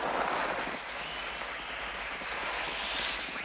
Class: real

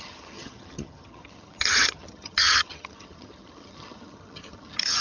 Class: fake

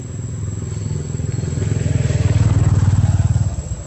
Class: real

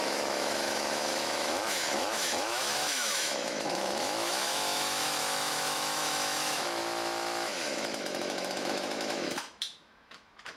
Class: fake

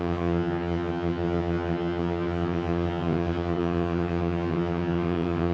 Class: fake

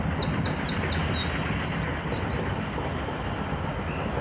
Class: real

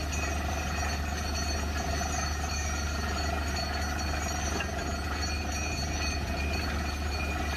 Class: real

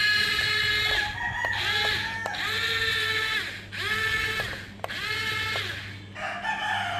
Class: real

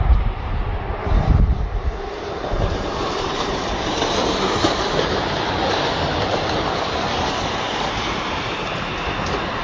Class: fake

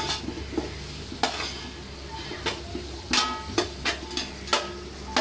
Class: real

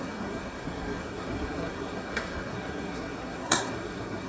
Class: fake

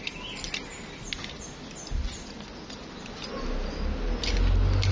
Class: real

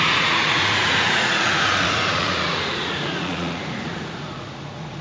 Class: fake